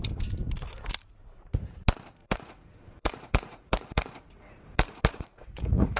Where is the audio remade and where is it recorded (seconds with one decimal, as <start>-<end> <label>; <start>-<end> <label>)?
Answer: 0.0-2.2 recorded; 2.2-6.0 remade